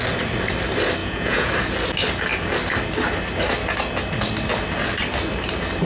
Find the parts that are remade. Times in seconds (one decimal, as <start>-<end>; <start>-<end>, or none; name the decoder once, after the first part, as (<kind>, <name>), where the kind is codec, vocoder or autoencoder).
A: 1.0-1.5 (vocoder, Vocos)